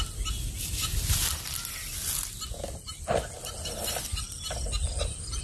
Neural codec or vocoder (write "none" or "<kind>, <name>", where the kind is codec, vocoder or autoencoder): none